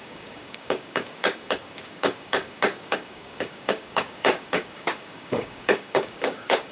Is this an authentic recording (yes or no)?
no